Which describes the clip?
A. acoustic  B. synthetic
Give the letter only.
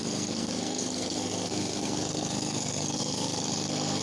B